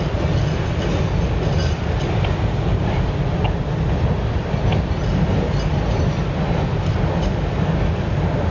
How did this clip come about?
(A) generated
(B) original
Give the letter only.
B